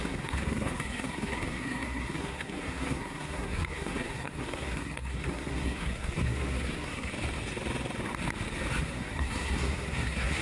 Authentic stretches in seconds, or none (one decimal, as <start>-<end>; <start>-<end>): 7.1-8.8

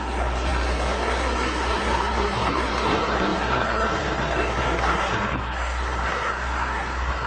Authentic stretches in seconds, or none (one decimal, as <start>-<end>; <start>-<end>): none

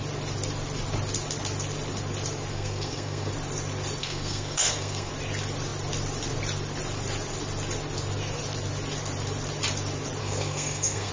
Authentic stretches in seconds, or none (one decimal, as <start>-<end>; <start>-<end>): 0.0-2.5; 3.3-4.0; 5.1-10.2

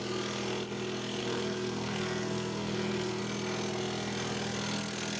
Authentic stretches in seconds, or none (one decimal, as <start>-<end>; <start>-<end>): 0.0-1.2; 3.2-5.2

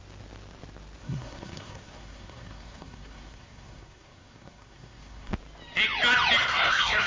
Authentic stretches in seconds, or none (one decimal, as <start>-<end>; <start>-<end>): 0.0-1.0; 5.3-6.4